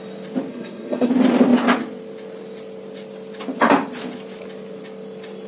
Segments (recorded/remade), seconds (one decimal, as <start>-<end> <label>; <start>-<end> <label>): 0.0-0.5 recorded; 0.5-1.1 remade; 1.1-5.5 recorded